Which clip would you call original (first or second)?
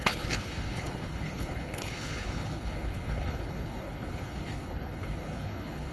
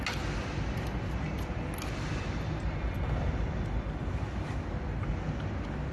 second